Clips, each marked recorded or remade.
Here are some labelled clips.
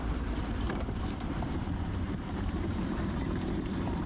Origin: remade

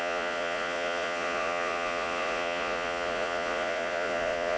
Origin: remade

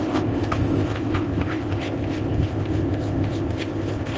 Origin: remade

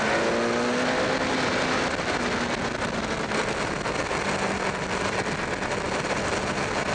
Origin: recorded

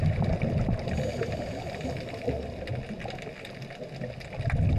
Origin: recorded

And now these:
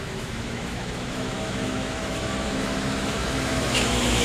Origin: remade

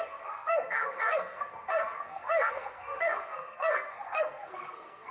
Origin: remade